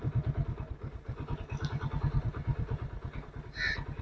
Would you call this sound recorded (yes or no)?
yes